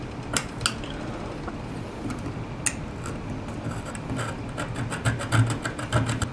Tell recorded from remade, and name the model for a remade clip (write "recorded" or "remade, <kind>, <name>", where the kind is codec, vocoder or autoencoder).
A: recorded